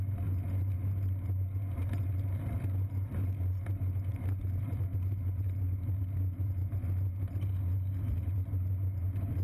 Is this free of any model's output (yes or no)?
yes